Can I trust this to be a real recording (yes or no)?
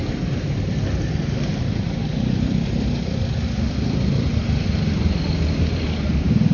yes